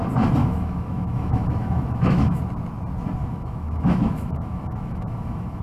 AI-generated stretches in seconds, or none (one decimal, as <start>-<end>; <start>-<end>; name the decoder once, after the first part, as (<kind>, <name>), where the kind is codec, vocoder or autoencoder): 0.4-2.4 (autoencoder, DAC-VAE); 3.2-5.6